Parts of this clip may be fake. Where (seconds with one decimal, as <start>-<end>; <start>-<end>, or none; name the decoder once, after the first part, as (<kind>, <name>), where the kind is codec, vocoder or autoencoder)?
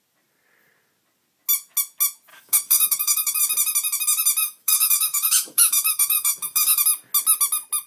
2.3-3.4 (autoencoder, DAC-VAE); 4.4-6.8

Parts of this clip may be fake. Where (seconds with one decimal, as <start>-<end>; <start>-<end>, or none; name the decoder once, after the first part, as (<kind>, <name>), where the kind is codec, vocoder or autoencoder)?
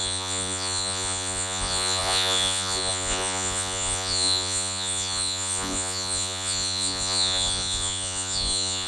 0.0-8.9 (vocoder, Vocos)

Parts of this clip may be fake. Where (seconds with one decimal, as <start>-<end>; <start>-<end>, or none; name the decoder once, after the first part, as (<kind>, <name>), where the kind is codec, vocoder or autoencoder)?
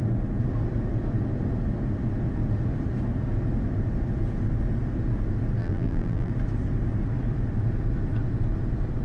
5.6-6.3 (vocoder, BigVGAN v2)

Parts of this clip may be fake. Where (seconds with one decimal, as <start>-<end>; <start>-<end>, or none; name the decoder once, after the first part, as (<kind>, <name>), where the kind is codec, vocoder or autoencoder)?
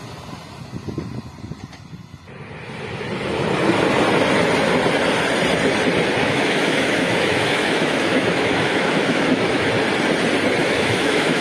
6.2-9.7 (autoencoder, DAC-VAE); 10.6-11.4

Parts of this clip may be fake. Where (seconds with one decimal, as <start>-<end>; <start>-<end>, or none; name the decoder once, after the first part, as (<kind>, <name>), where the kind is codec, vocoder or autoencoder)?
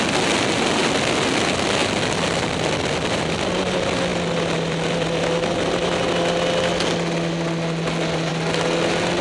none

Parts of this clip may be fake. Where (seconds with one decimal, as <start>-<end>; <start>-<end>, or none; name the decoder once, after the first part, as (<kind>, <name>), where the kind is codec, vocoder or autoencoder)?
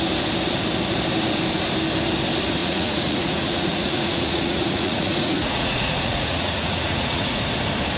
2.6-7.4 (vocoder, Vocos)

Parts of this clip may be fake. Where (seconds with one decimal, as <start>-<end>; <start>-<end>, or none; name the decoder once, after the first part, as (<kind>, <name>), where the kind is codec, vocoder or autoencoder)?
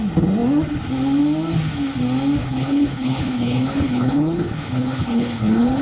2.4-5.8 (codec, HILCodec)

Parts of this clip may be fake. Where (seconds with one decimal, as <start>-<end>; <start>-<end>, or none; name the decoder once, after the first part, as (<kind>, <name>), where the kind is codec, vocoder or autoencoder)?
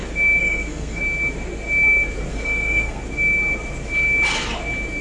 0.4-1.0 (codec, SNAC); 2.3-3.0